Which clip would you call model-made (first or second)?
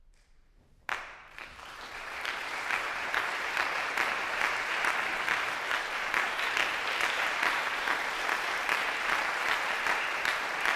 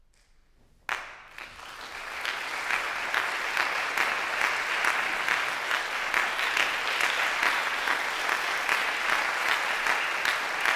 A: first